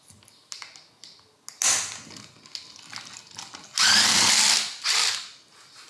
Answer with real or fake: real